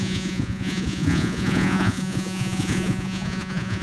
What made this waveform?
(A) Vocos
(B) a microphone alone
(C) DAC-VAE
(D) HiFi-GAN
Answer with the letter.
A